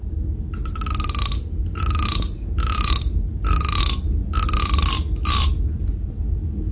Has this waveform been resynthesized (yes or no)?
no